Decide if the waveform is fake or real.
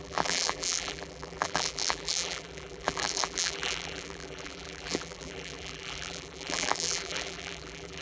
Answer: fake